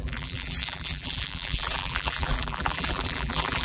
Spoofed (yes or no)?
yes